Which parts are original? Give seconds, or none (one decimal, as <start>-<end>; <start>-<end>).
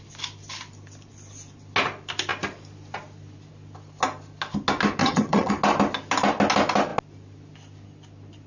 0.0-5.0; 5.5-8.5